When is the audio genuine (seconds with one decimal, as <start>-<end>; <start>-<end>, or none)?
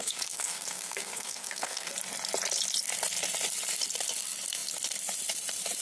1.9-5.8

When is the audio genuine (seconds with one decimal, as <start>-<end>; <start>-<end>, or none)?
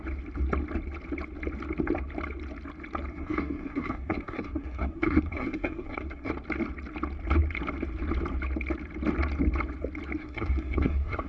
0.0-3.1; 6.3-10.2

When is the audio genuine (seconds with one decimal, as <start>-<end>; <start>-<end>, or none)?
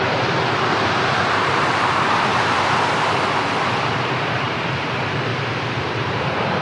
2.3-3.9; 5.3-5.8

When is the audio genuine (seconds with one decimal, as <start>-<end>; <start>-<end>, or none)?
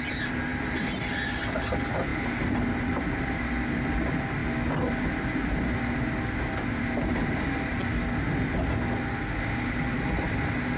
0.0-10.8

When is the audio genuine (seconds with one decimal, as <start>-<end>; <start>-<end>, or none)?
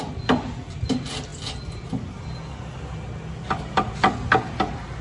0.0-5.0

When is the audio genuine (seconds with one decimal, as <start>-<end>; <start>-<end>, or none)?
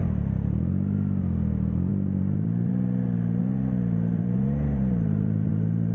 0.0-1.9; 2.7-3.4; 5.5-5.9